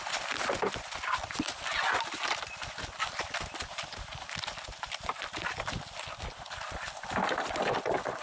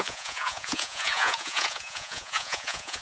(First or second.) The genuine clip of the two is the first